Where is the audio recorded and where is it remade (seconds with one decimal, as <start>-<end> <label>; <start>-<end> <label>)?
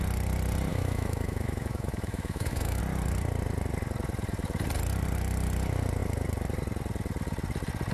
0.0-0.7 recorded; 0.7-2.8 remade; 2.8-7.9 recorded